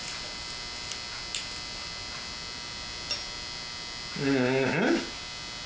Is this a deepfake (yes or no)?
no